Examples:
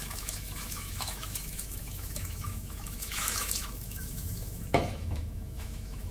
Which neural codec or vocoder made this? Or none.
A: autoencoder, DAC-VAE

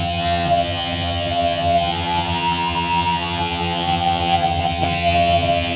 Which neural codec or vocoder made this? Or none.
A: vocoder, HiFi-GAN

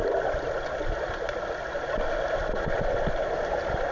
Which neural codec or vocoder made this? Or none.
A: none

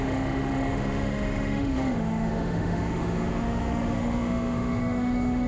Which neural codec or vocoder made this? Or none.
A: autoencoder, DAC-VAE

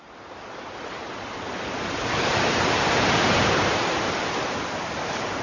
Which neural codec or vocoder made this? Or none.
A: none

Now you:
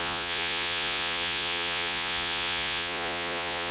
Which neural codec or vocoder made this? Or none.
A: vocoder, Vocos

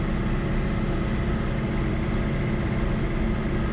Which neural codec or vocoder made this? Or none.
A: none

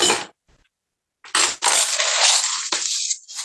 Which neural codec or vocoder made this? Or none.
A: none